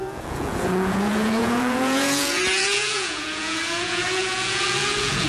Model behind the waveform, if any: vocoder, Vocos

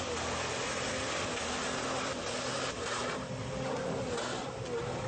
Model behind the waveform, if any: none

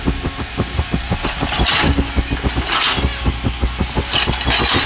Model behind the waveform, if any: none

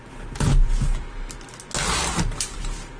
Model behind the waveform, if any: none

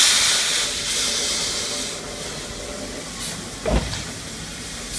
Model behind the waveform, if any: none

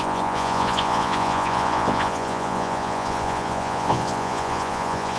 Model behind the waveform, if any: vocoder, Vocos